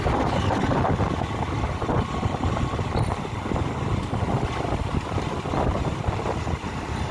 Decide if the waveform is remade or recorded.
recorded